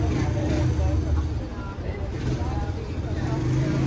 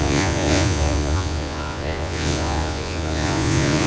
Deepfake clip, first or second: second